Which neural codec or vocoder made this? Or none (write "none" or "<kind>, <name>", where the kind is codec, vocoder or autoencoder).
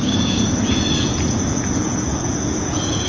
vocoder, Vocos